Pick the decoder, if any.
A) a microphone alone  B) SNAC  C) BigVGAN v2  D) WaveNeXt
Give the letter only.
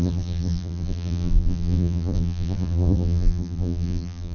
C